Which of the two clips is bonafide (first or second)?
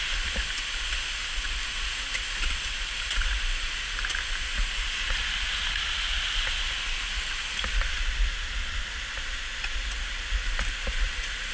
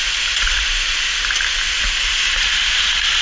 first